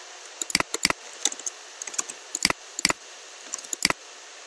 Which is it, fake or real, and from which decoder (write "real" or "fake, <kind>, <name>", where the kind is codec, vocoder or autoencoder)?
real